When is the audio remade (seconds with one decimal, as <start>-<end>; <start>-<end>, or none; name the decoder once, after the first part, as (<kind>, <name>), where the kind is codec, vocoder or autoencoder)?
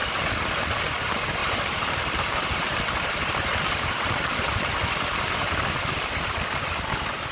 none